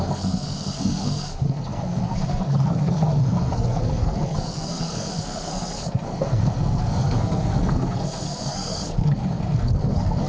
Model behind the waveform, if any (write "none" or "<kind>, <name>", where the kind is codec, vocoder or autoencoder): codec, SNAC